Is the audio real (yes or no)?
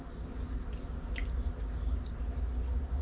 yes